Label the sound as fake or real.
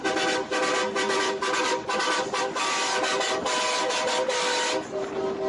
real